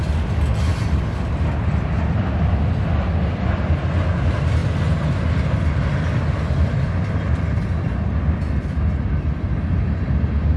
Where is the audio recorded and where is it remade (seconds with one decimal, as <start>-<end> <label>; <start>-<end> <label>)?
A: 0.0-10.6 recorded

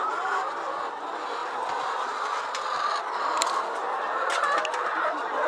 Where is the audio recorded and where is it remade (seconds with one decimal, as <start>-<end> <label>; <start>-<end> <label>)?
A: 0.0-1.4 recorded; 1.4-3.8 remade; 3.8-5.5 recorded